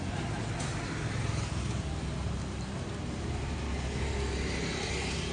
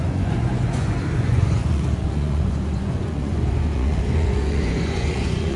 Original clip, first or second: first